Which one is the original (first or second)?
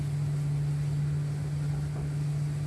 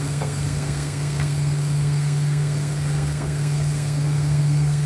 first